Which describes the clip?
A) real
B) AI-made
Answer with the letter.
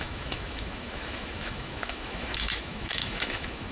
B